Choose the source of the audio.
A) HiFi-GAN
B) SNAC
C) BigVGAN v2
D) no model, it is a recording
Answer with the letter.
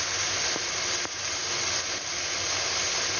D